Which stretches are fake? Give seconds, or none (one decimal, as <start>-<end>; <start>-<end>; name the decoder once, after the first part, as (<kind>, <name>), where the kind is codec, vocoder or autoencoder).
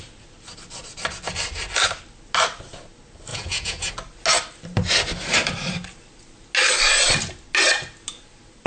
3.3-3.9 (vocoder, Vocos)